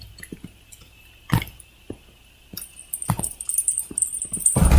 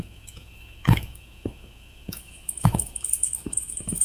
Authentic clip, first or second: first